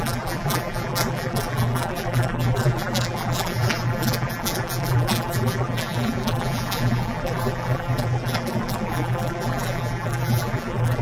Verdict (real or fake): fake